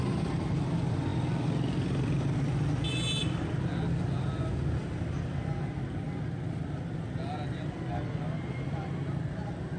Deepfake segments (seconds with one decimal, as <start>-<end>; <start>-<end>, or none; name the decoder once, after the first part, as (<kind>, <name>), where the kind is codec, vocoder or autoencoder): none